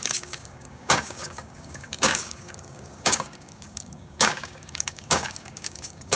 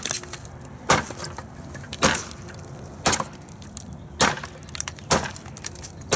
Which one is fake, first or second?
first